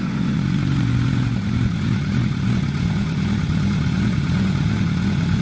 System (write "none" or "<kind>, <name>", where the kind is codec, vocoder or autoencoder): vocoder, Vocos